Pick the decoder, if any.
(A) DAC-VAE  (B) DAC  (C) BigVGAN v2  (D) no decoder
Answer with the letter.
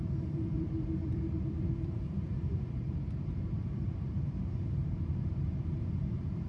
C